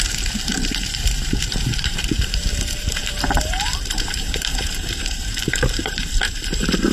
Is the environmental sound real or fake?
fake